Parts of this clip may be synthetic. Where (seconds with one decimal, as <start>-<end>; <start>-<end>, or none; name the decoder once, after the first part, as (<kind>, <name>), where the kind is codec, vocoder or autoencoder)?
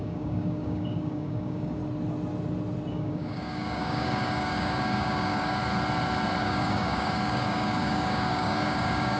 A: 0.0-1.8 (codec, DAC); 2.9-5.6; 6.4-9.2